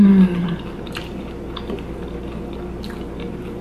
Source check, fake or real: real